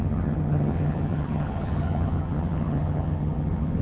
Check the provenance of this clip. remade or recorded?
remade